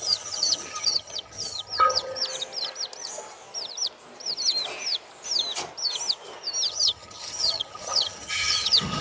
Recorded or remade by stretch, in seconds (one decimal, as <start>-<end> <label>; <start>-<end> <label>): 0.0-2.2 remade; 2.2-6.7 recorded; 6.7-9.0 remade